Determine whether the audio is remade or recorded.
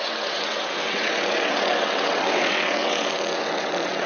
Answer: remade